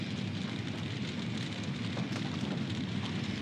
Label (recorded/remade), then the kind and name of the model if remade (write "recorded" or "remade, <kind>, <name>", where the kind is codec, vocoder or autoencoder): recorded